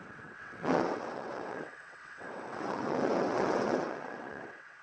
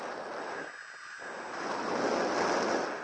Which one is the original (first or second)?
second